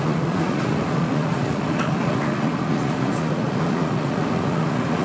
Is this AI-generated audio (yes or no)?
yes